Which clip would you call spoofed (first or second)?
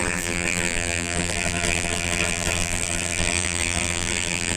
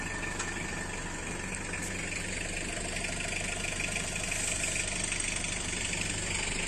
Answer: first